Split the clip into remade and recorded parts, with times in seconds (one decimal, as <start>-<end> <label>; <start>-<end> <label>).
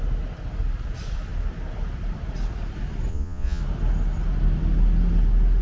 0.0-3.1 recorded; 3.1-3.6 remade; 3.6-5.6 recorded